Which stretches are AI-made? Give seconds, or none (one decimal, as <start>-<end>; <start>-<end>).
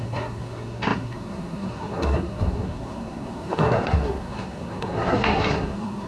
0.0-6.1